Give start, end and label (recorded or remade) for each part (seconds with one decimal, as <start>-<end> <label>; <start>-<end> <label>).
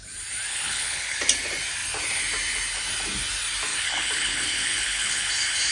0.0-0.5 recorded; 0.5-1.2 remade; 1.2-3.7 recorded; 3.7-5.3 remade; 5.3-5.7 recorded